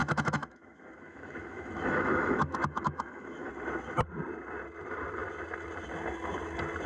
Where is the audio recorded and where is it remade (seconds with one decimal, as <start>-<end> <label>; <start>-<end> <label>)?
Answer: 0.0-3.5 remade; 3.5-6.9 recorded